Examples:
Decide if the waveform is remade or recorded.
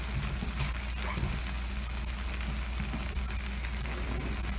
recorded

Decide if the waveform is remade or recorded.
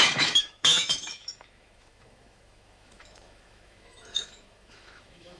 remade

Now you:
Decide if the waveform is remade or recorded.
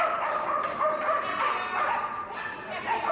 recorded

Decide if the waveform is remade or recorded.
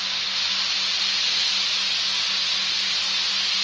recorded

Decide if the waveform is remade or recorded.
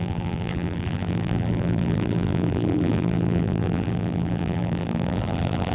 remade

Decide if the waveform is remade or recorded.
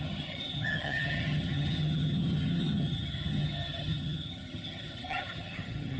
remade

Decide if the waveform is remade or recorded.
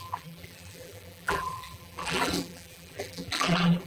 remade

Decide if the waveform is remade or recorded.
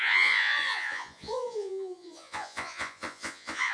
remade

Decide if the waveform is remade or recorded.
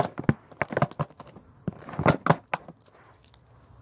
recorded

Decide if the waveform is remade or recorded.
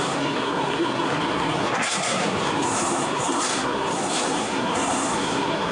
remade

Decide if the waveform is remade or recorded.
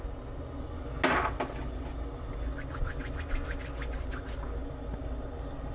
recorded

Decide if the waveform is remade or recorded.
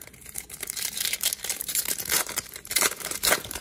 remade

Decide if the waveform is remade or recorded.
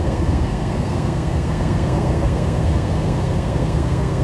remade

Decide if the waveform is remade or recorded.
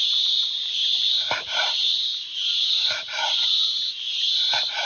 remade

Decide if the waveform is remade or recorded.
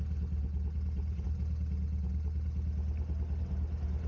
recorded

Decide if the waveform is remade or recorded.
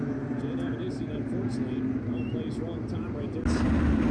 recorded